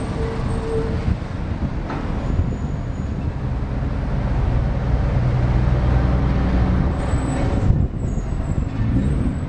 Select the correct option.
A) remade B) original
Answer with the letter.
B